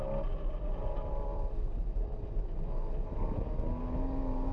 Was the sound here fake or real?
real